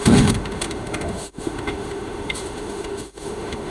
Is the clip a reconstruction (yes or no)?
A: yes